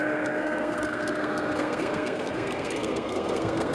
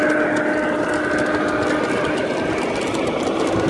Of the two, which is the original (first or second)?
second